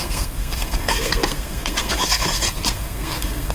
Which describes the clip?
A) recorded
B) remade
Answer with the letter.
B